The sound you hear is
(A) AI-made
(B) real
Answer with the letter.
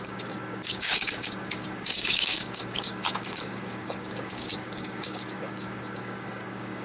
A